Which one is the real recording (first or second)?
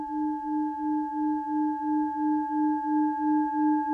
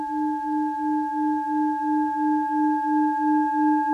second